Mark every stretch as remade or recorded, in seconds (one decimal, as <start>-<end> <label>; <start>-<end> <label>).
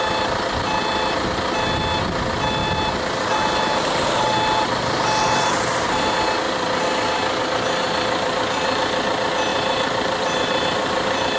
0.0-9.5 recorded; 9.5-11.4 remade